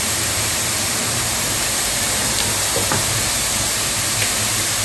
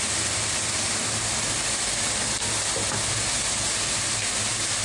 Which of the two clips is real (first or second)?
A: second